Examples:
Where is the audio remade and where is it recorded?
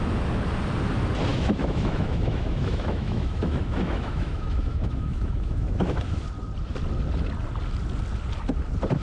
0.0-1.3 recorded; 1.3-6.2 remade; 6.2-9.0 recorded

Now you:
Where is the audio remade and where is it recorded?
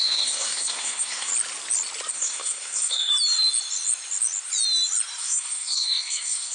0.0-1.3 remade; 1.3-2.1 recorded; 2.1-3.1 remade; 3.1-5.2 recorded; 5.2-6.5 remade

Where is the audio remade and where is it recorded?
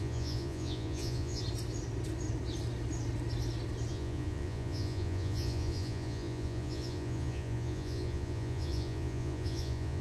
0.0-1.4 remade; 1.4-3.9 recorded; 3.9-10.0 remade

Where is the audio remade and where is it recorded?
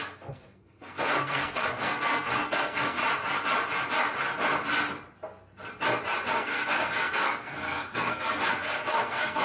0.0-3.0 remade; 3.0-6.3 recorded; 6.3-9.4 remade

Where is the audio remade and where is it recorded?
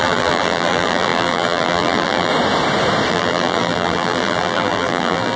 0.0-2.3 remade; 2.3-3.1 recorded; 3.1-5.4 remade